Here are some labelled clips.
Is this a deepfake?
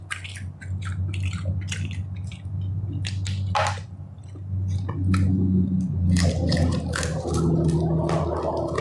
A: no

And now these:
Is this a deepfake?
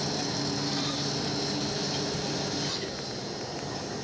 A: no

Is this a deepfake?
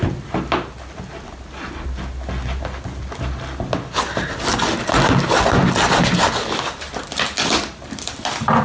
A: no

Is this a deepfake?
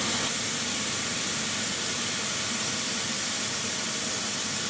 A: yes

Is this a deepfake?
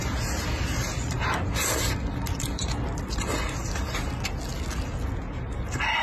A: no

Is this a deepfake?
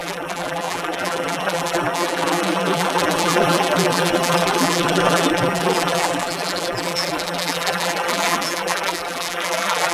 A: yes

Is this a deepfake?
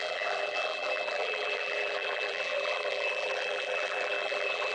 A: yes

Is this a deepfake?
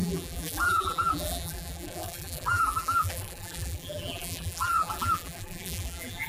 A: yes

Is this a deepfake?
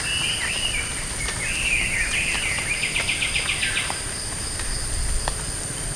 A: no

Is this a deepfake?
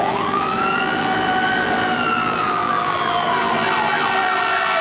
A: yes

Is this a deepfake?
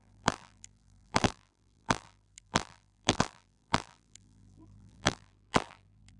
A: yes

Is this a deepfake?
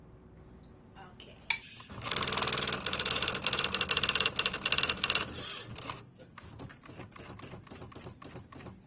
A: no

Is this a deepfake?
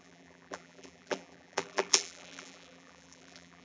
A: yes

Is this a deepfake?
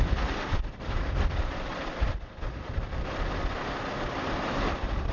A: yes